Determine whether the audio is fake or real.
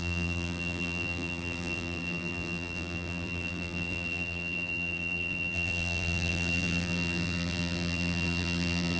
fake